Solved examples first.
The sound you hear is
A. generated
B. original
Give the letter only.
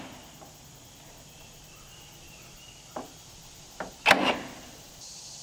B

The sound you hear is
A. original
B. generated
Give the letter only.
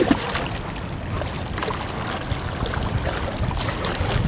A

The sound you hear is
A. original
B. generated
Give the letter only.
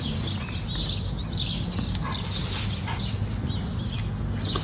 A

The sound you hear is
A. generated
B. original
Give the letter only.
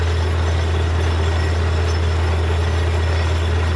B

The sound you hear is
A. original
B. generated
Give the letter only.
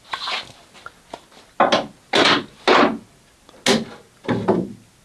A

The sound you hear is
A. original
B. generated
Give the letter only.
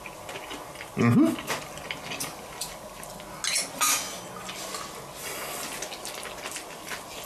A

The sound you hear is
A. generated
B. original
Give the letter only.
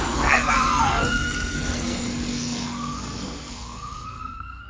A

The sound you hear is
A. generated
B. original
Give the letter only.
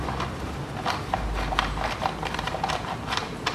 B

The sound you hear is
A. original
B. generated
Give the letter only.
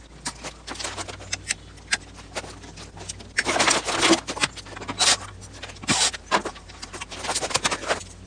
A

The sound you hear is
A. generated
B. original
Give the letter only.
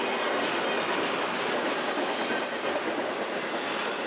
B